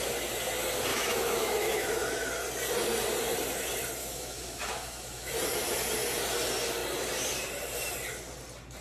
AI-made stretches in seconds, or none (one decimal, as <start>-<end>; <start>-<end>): 0.9-2.3; 4.0-5.3